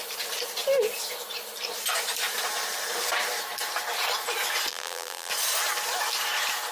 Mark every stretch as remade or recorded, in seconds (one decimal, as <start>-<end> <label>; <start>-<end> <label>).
0.0-4.7 recorded; 4.7-5.3 remade; 5.3-6.7 recorded